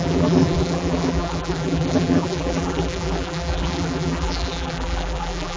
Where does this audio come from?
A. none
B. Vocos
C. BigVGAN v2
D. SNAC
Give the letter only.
C